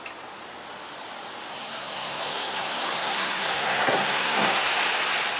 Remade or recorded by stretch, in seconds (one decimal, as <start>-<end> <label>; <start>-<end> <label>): 0.0-1.5 recorded; 1.5-4.7 remade; 4.7-5.4 recorded